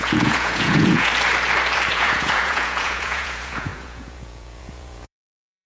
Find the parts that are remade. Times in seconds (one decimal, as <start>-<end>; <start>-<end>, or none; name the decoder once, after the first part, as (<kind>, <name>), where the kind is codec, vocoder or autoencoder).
0.0-1.1 (vocoder, Vocos); 1.9-5.7